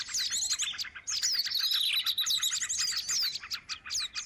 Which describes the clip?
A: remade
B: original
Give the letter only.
B